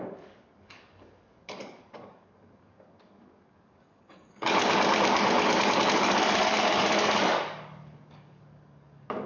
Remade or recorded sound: remade